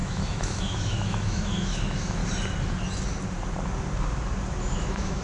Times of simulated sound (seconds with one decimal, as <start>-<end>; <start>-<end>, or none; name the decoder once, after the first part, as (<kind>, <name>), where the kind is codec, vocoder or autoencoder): 0.0-2.2 (autoencoder, DAC-VAE); 4.6-5.2